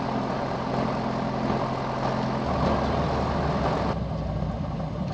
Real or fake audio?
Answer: real